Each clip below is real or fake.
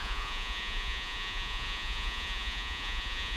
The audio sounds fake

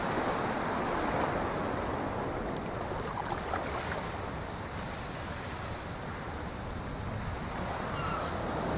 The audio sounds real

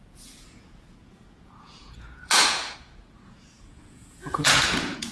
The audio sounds fake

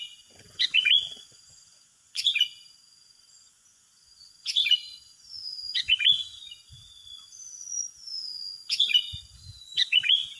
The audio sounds fake